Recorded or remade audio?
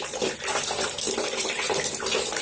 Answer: recorded